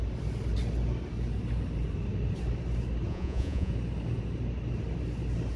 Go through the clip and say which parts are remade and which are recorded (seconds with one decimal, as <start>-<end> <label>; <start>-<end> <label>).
0.0-3.1 recorded; 3.1-3.7 remade; 3.7-5.6 recorded